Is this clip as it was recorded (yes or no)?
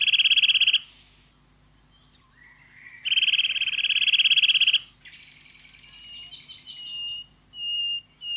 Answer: yes